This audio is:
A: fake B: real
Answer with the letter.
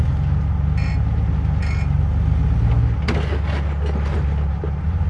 B